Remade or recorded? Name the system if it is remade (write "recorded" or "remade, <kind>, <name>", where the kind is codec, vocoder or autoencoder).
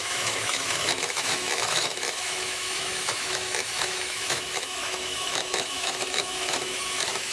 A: remade, autoencoder, DAC-VAE